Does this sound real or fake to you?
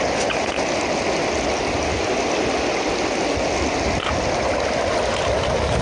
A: real